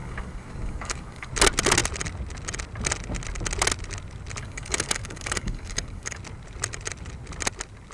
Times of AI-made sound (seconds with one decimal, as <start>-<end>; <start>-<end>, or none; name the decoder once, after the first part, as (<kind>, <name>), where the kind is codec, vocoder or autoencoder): 0.0-1.3 (codec, DAC); 4.4-6.2